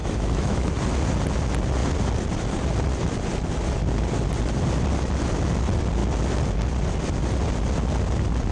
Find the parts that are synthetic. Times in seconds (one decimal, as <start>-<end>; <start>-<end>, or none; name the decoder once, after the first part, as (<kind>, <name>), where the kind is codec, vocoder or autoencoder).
0.0-0.7 (autoencoder, DAC-VAE)